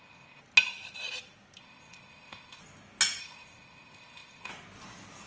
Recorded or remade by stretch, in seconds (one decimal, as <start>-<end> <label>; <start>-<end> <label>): 0.0-0.4 remade; 0.4-1.6 recorded; 1.6-2.6 remade; 2.6-3.2 recorded; 3.2-4.5 remade; 4.5-5.3 recorded